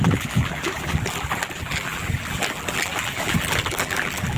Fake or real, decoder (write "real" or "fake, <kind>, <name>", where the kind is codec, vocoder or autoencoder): fake, vocoder, BigVGAN v2